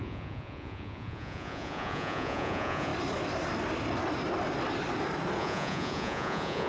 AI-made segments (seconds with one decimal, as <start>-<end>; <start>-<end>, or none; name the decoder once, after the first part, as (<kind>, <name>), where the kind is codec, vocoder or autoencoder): 0.0-2.9 (vocoder, Vocos); 5.4-6.7